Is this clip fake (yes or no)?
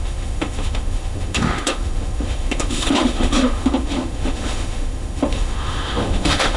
yes